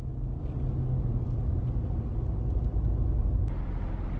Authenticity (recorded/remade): recorded